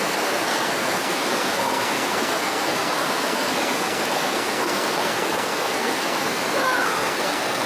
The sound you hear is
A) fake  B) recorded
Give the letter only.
A